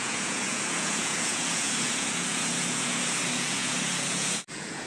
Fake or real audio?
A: fake